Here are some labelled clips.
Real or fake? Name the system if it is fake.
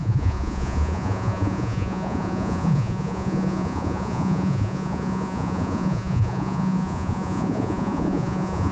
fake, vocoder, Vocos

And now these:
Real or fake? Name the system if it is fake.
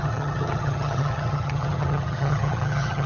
fake, vocoder, HiFi-GAN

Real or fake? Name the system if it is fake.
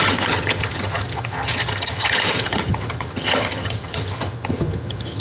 fake, vocoder, HiFi-GAN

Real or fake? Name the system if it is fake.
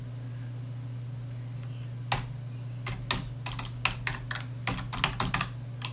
real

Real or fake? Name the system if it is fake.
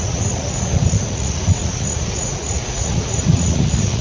fake, vocoder, Vocos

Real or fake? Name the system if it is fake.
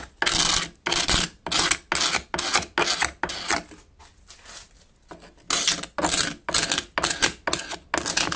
real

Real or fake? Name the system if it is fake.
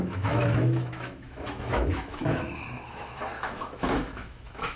fake, autoencoder, DAC-VAE